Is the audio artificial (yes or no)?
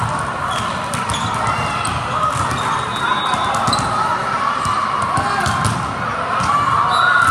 no